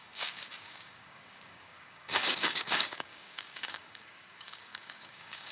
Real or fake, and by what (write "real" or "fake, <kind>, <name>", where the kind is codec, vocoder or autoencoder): fake, codec, DAC